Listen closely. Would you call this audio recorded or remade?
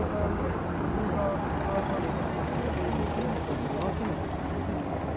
recorded